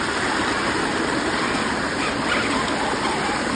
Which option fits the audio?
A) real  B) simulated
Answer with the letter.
A